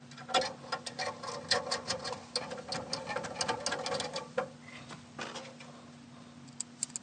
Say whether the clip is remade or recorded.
recorded